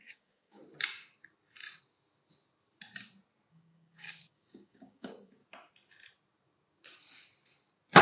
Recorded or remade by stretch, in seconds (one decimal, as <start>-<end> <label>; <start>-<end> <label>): 0.0-0.6 remade; 0.6-3.5 recorded; 3.5-5.4 remade; 5.4-8.0 recorded